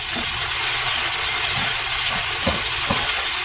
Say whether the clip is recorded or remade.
remade